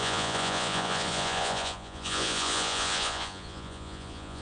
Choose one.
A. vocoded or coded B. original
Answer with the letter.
A